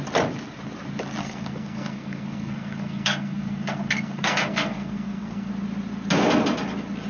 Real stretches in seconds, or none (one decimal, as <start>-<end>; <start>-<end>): 0.0-1.2; 5.5-7.1

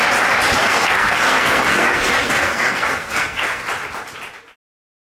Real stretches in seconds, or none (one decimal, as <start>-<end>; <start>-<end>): 0.0-0.6; 3.6-5.0

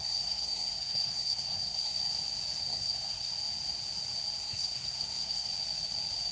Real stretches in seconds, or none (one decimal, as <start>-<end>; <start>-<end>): 2.0-2.6; 3.3-4.4; 5.5-6.3

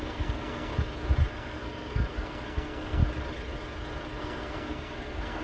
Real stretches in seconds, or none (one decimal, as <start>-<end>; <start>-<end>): 0.7-1.3; 3.0-4.2

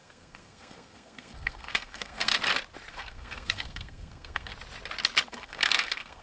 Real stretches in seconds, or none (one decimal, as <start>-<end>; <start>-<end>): 2.3-2.9; 4.5-5.3